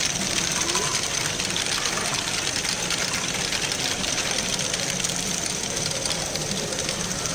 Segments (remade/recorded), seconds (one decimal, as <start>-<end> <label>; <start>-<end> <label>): 0.0-7.3 recorded